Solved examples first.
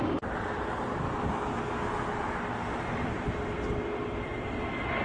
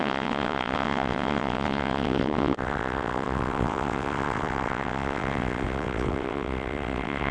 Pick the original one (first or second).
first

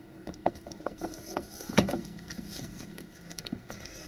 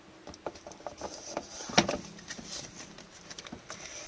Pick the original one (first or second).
second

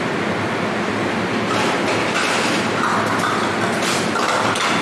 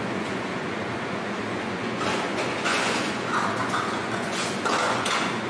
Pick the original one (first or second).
first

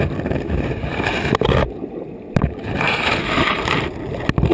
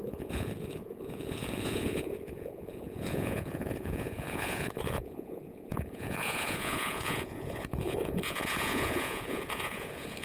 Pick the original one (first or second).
first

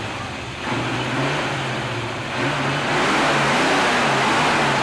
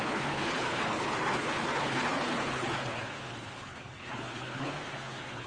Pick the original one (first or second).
first